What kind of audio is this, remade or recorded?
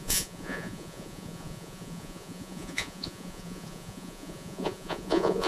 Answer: remade